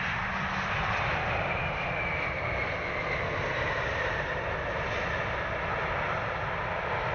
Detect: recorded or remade recorded